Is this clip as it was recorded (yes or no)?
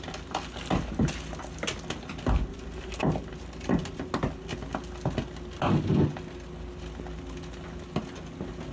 yes